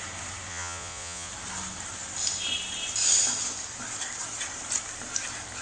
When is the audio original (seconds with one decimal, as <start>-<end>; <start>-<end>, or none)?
0.0-0.5; 1.3-5.6